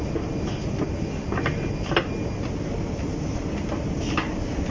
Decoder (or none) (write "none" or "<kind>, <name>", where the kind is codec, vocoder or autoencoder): none